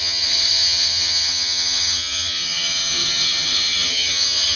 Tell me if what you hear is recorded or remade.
remade